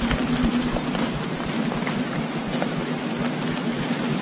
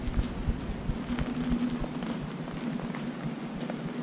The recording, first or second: second